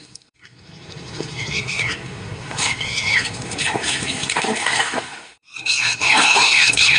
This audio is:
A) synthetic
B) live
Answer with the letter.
A